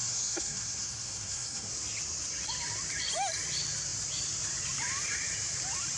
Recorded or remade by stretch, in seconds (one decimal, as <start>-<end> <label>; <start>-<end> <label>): 0.0-1.7 remade; 1.7-6.0 recorded